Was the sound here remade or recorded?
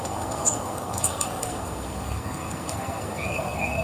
remade